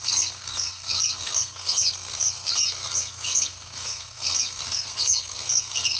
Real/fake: fake